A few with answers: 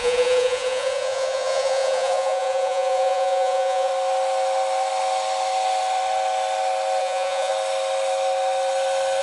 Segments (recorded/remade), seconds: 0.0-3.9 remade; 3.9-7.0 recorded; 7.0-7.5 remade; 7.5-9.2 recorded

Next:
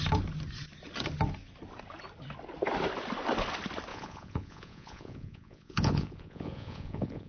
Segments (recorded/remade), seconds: 0.0-3.9 recorded; 3.9-7.3 remade

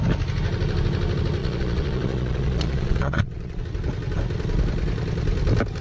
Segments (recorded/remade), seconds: 0.0-1.4 recorded; 1.4-3.6 remade; 3.6-5.8 recorded

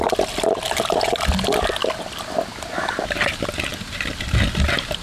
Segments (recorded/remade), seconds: 0.0-5.0 recorded